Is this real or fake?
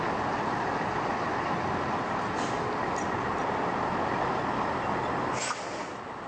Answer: real